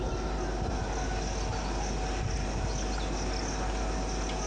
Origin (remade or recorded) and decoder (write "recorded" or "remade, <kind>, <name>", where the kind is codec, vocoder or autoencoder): recorded